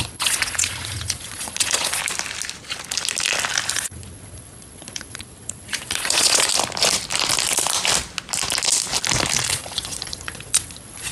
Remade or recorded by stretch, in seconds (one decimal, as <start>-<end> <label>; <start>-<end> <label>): 0.0-2.0 remade; 2.0-3.7 recorded; 3.7-6.5 remade; 6.5-9.5 recorded; 9.5-11.1 remade